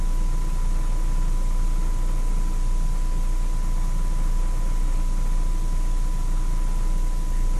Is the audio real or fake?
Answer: real